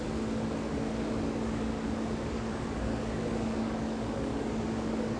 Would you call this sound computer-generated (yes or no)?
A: yes